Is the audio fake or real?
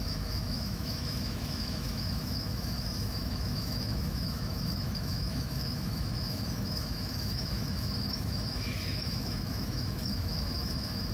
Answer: fake